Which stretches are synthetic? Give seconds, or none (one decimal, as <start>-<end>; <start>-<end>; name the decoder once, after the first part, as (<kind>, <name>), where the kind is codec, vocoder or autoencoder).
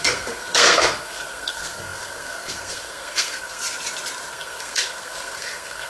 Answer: 0.0-3.6 (codec, SNAC); 4.3-5.9